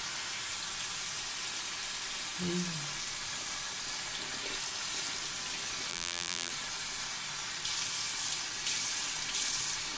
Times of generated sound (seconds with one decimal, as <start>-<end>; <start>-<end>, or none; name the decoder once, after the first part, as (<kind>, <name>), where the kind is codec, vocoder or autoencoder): 5.9-6.5 (vocoder, BigVGAN v2)